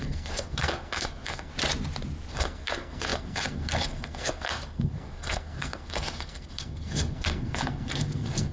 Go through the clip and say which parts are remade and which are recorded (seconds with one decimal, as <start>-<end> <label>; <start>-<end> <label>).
0.0-1.5 remade; 1.5-2.3 recorded; 2.3-8.5 remade